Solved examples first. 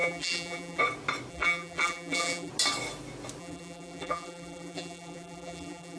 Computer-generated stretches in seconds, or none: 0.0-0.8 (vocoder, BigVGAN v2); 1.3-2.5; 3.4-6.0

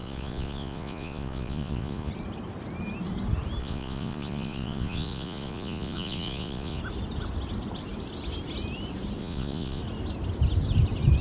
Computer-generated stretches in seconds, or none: 0.0-2.1 (vocoder, Vocos); 3.6-6.8; 9.2-9.8

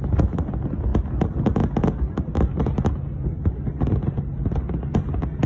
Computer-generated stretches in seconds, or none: none

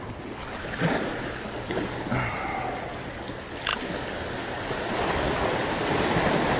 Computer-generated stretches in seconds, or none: none